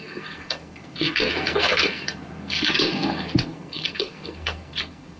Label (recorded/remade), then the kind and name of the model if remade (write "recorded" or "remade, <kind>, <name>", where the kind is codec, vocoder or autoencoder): remade, codec, SNAC